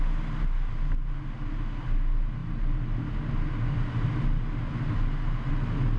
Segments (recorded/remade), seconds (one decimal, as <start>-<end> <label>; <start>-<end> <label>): 0.0-6.0 recorded